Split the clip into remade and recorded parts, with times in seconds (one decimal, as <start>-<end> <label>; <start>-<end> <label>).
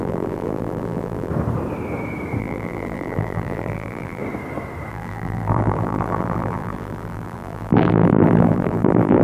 0.0-1.3 remade; 1.3-2.4 recorded; 2.4-4.2 remade; 4.2-4.9 recorded; 4.9-9.2 remade